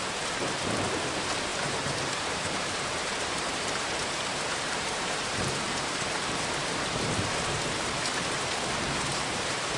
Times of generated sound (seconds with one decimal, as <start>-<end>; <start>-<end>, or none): 0.0-9.8